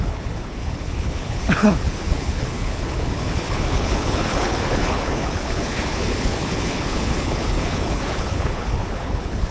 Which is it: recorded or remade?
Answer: remade